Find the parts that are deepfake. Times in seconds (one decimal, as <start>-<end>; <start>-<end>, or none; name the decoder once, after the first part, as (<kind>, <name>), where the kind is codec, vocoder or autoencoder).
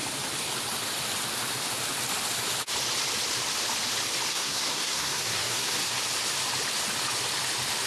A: 4.3-5.9 (codec, SNAC)